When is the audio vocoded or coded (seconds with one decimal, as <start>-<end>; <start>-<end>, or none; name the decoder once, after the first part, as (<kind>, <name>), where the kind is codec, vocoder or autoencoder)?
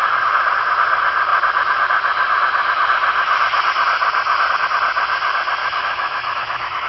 5.6-6.9 (autoencoder, DAC-VAE)